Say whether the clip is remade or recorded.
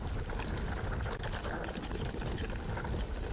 recorded